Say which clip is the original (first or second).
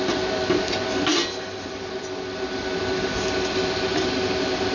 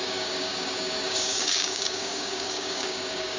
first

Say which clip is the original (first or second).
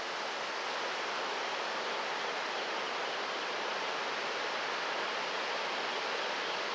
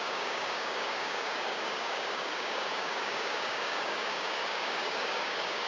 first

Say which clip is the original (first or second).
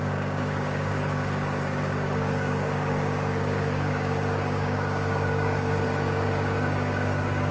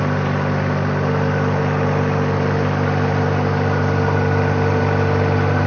second